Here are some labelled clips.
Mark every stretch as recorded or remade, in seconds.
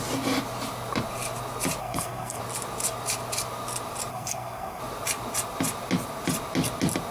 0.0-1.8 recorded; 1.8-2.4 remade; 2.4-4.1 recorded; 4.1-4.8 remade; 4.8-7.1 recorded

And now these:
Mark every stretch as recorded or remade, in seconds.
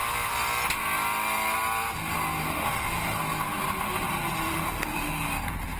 0.0-2.4 recorded; 2.4-3.2 remade; 3.2-4.5 recorded; 4.5-5.3 remade; 5.3-5.8 recorded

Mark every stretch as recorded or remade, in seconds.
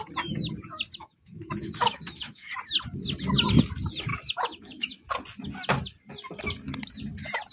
0.0-1.0 recorded; 1.0-2.5 remade; 2.5-4.1 recorded; 4.1-5.1 remade; 5.1-7.5 recorded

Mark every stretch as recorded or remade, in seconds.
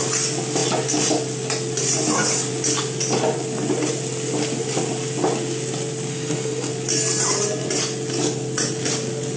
0.0-6.1 recorded; 6.1-6.7 remade; 6.7-9.4 recorded